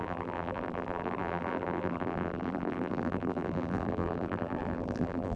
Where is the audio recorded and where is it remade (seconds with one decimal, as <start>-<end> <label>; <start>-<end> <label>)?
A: 0.0-5.4 remade